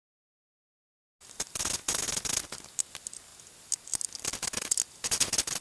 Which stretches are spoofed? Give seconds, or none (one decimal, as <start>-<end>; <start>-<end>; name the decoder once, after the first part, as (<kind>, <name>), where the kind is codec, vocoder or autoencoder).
none

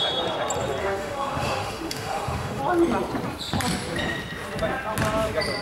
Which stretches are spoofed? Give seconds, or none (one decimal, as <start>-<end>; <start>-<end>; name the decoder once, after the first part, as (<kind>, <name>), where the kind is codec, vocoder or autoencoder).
0.8-2.6 (autoencoder, DAC-VAE)

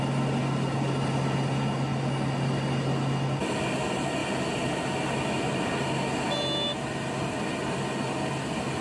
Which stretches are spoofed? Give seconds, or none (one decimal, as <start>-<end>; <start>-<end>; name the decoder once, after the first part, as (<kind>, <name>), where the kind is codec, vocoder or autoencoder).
none